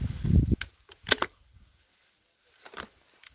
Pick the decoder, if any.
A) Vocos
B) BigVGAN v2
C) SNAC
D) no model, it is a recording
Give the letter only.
D